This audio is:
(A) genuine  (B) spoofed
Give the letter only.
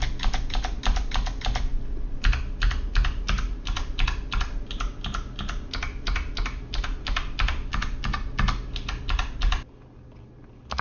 A